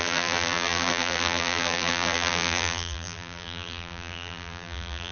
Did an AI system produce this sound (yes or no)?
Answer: yes